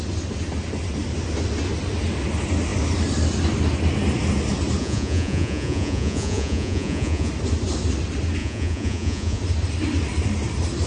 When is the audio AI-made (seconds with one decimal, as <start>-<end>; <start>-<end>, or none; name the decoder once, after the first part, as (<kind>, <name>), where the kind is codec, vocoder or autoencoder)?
4.8-7.3 (vocoder, Vocos); 8.4-9.4